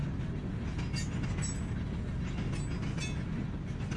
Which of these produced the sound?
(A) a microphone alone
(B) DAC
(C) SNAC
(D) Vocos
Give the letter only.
A